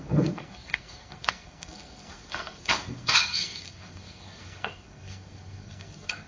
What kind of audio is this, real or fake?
fake